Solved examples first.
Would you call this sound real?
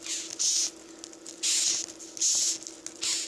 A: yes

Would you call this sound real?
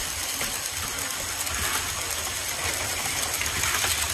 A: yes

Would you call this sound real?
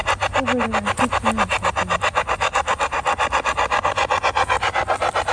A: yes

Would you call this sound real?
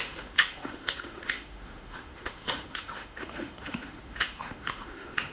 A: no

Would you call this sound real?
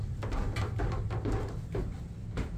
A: yes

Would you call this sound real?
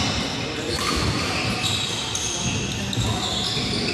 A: yes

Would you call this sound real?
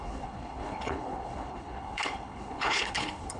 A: no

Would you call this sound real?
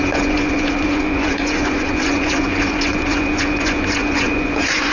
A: no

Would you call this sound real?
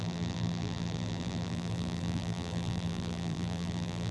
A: no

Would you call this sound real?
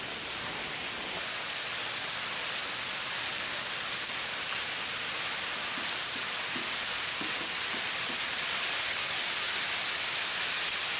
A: yes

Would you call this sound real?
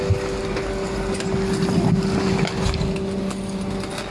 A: yes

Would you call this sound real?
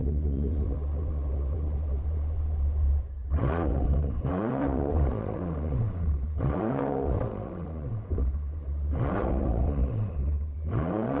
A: no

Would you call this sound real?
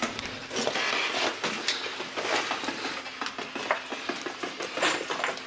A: yes